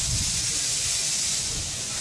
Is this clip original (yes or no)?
no